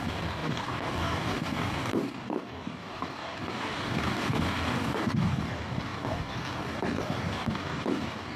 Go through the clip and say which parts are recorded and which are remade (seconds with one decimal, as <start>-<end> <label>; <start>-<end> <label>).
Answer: 0.0-8.4 remade